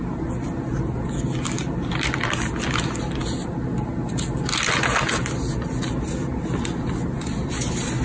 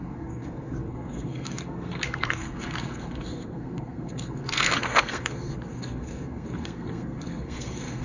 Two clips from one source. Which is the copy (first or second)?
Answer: second